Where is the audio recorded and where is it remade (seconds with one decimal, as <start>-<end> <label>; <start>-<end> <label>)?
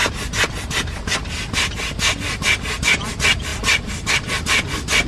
0.0-5.1 recorded